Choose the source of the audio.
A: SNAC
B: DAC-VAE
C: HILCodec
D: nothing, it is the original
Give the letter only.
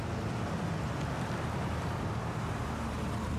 D